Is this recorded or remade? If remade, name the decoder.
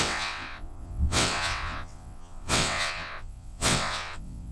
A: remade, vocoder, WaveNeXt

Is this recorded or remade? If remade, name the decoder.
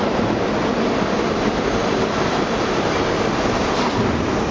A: recorded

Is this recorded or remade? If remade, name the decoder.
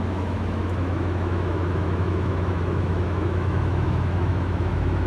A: remade, autoencoder, DAC-VAE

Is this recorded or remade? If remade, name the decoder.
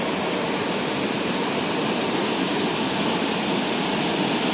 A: recorded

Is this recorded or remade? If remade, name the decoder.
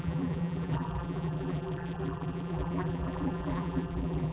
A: remade, vocoder, BigVGAN v2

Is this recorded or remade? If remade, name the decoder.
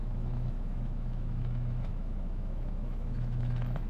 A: remade, autoencoder, DAC-VAE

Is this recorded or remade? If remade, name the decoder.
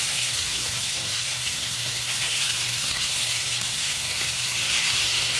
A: remade, codec, SNAC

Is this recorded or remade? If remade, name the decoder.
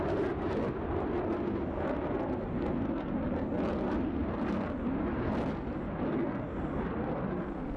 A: recorded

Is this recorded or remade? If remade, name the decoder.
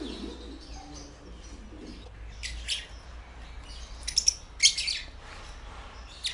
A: recorded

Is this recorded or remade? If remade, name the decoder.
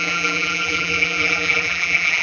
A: remade, vocoder, BigVGAN v2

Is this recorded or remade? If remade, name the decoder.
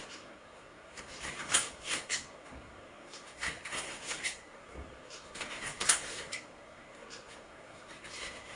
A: remade, codec, SNAC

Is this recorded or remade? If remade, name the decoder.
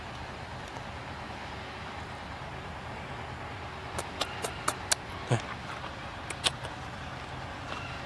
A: recorded